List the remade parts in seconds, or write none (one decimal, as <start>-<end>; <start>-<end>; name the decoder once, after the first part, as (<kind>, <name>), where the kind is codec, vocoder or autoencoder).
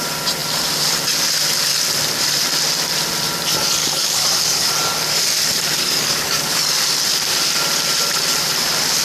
3.8-4.7 (codec, DAC); 5.8-6.7